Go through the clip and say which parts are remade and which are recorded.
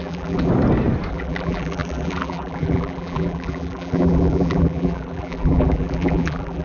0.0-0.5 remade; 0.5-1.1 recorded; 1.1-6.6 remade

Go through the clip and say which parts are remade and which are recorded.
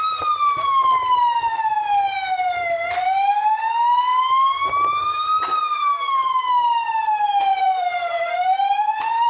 0.0-7.5 recorded; 7.5-9.3 remade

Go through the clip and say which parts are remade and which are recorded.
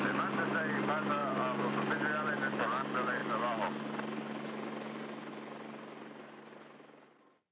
0.0-7.5 recorded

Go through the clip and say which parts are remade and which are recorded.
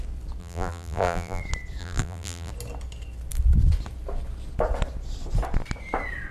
0.0-0.4 recorded; 0.4-1.4 remade; 1.4-1.8 recorded; 1.8-2.5 remade; 2.5-6.3 recorded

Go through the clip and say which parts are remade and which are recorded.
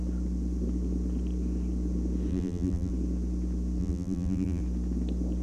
0.0-2.3 recorded; 2.3-2.9 remade; 2.9-3.8 recorded; 3.8-4.6 remade; 4.6-5.4 recorded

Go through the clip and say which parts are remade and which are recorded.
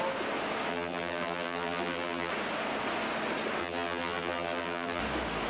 0.0-0.7 recorded; 0.7-2.3 remade; 2.3-3.6 recorded; 3.6-5.0 remade; 5.0-5.5 recorded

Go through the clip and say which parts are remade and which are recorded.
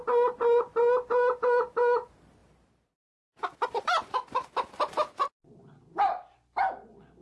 0.0-2.4 recorded; 2.4-4.9 remade; 4.9-7.2 recorded